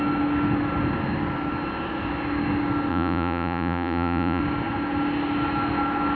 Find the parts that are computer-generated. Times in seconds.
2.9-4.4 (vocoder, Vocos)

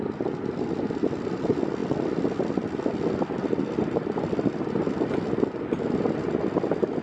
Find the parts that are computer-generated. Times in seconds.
none

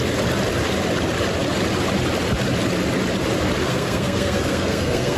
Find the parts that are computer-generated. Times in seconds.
3.6-5.2 (codec, SNAC)

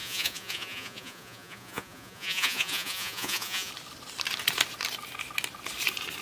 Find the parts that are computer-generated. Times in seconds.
0.0-3.7 (vocoder, Vocos)

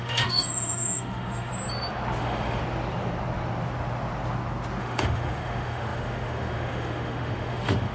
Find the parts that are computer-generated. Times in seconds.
0.0-1.5 (autoencoder, DAC-VAE); 2.2-2.6; 4.8-7.9